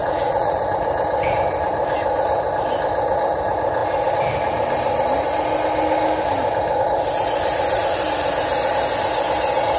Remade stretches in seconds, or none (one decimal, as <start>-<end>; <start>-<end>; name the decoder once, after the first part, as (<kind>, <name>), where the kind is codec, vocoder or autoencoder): 0.0-0.6 (vocoder, Vocos)